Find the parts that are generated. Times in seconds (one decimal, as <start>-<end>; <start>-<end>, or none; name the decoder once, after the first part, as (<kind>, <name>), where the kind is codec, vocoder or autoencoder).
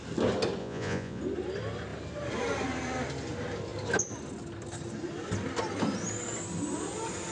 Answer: 0.6-1.2 (vocoder, Vocos)